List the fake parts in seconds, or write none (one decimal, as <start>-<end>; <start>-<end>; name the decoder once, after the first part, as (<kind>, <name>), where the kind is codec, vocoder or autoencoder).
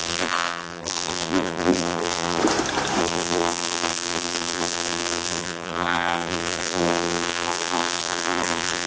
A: 0.0-2.4 (vocoder, BigVGAN v2); 3.0-8.9